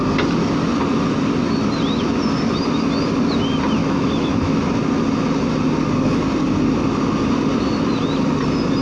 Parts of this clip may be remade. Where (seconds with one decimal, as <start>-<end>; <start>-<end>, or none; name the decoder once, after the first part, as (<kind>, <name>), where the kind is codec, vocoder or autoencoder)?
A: 3.8-4.6 (autoencoder, DAC-VAE)